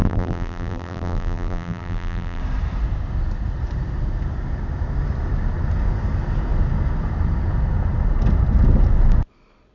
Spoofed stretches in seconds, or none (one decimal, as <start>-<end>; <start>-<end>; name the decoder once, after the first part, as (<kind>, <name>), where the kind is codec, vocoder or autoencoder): 0.0-2.4 (vocoder, BigVGAN v2)